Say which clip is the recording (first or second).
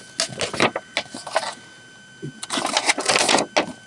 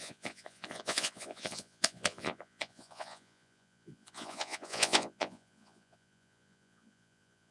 first